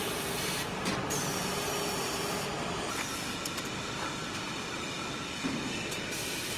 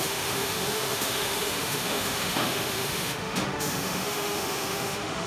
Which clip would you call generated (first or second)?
second